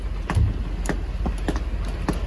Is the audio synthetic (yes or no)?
no